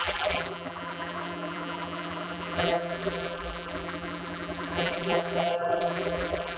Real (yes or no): no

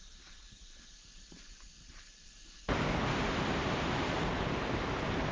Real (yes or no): no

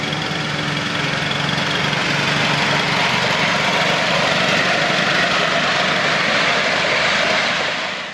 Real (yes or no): yes